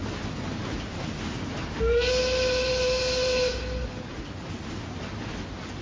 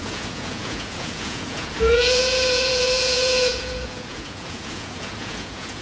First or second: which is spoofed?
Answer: second